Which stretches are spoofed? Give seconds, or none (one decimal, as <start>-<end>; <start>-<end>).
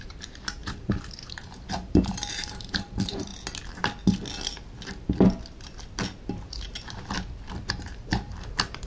0.0-3.3; 7.7-8.9